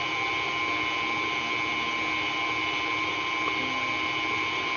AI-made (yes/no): no